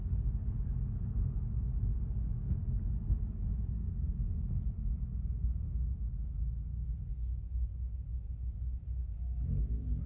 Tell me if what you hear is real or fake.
real